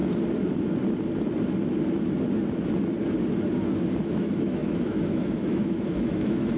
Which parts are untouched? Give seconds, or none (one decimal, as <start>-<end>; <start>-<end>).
0.0-4.0

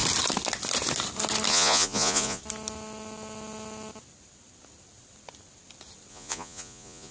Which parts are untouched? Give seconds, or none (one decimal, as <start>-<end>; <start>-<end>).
0.0-1.5; 2.4-6.1